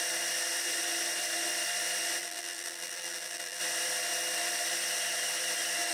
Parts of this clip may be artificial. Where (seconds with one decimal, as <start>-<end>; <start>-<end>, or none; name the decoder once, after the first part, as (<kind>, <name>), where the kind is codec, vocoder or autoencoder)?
2.2-3.6 (vocoder, BigVGAN v2)